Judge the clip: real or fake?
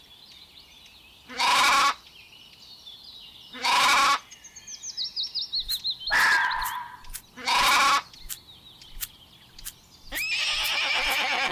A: real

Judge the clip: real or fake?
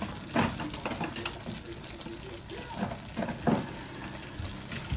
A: real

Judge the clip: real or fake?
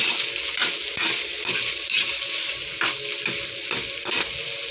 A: real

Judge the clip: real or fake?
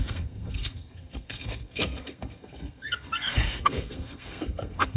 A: fake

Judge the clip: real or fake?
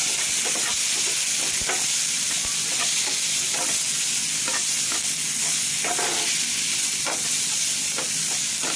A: real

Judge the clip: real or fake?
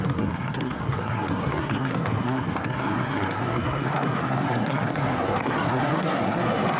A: fake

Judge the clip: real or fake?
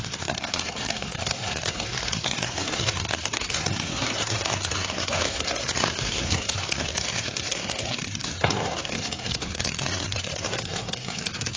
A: fake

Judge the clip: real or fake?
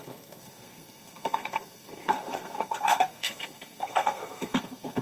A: fake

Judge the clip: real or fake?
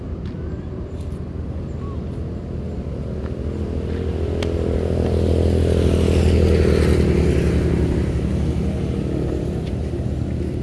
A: real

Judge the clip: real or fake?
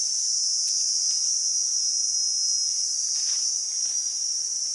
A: real